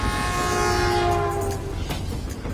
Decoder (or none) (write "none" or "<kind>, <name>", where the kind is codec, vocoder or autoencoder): none